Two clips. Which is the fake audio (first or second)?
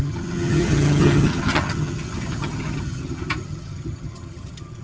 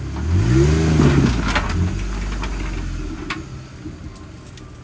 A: first